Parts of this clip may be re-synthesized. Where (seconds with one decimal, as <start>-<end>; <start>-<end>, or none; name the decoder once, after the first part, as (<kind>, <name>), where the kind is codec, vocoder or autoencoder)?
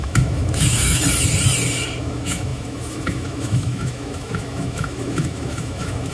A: 0.0-1.0 (autoencoder, DAC-VAE); 2.0-6.1